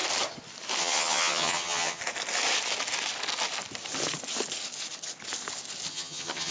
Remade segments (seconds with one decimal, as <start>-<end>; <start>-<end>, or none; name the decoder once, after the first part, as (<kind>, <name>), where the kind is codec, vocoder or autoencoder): 0.8-2.0 (vocoder, HiFi-GAN); 5.9-6.5